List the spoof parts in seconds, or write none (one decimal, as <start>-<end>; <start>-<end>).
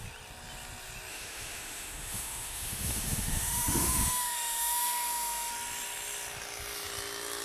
1.1-5.5